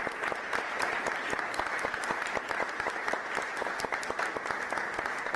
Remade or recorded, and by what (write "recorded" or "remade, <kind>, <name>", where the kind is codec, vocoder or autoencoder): recorded